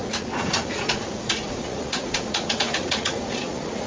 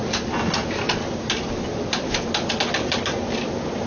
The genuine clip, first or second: second